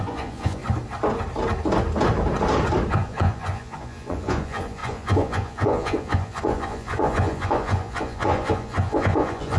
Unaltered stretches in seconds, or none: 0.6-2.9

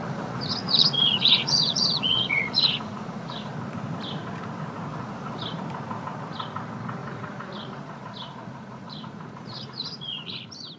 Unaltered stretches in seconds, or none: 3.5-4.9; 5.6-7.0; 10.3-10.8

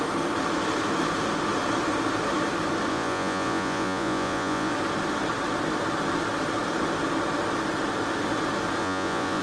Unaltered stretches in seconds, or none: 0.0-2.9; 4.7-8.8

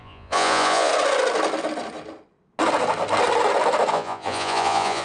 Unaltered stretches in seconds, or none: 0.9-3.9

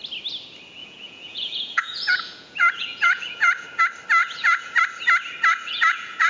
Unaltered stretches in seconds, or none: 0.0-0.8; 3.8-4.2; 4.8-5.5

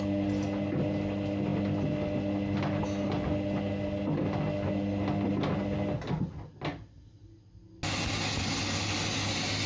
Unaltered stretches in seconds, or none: 0.0-9.7

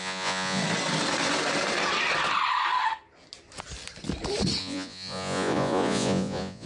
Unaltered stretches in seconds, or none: 0.6-4.6